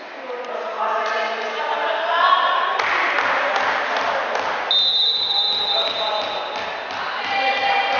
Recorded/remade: recorded